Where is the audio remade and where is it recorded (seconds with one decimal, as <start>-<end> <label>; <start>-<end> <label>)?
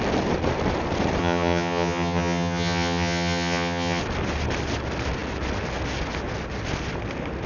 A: 0.0-1.2 recorded; 1.2-4.0 remade; 4.0-7.5 recorded